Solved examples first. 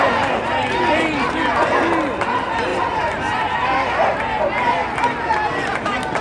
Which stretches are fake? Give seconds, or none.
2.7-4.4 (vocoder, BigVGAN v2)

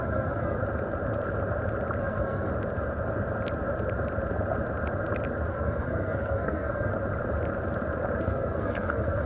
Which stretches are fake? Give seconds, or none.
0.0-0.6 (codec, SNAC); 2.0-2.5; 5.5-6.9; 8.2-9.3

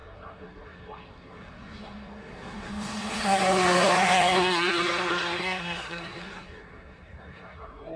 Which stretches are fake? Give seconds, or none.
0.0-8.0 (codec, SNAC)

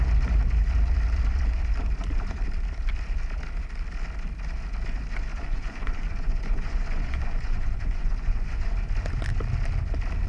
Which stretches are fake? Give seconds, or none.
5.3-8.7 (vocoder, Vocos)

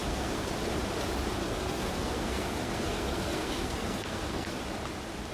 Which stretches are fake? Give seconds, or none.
0.0-0.5 (codec, SNAC); 1.4-4.6

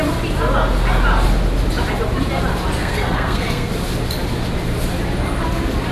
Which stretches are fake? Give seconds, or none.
2.8-3.7 (codec, SNAC)

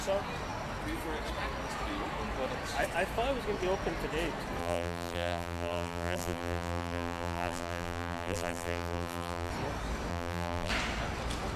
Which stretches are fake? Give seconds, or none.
4.6-9.5 (vocoder, BigVGAN v2); 10.1-10.7

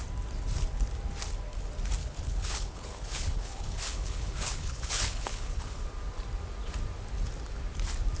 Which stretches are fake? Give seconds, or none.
2.0-5.8 (codec, HILCodec)